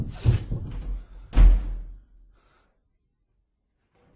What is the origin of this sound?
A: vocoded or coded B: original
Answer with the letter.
B